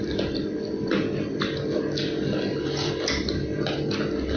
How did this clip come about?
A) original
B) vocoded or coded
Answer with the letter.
A